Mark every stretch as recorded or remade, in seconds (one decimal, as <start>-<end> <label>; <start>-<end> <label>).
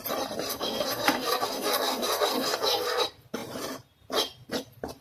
0.0-0.5 recorded; 0.5-3.0 remade; 3.0-5.0 recorded